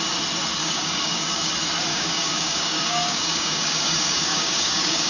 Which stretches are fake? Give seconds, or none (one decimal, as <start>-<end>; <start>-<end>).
0.6-1.5; 1.9-5.1